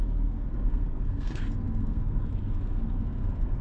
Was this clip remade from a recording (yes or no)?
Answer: yes